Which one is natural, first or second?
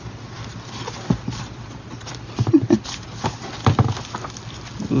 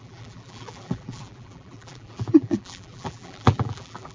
first